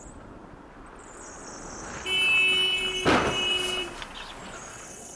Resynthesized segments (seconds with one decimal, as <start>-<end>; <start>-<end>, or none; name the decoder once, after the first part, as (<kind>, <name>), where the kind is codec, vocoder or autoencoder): 4.7-5.2 (vocoder, WaveNeXt)